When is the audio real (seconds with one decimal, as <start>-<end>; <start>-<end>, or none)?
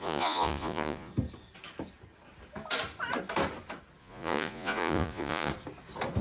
1.1-4.0; 5.5-6.2